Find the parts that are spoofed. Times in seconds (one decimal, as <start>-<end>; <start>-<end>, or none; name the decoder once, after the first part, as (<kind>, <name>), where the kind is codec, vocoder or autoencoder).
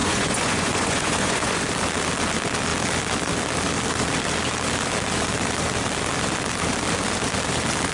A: 0.0-1.6 (vocoder, Vocos)